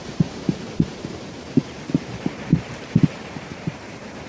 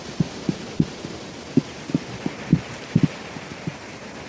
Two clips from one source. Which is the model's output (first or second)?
first